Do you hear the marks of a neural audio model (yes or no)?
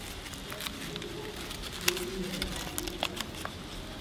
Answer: no